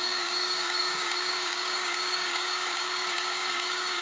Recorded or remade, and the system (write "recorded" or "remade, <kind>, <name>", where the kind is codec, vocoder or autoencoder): remade, codec, DAC